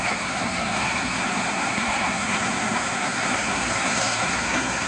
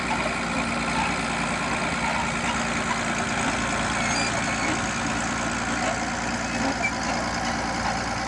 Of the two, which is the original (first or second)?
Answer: second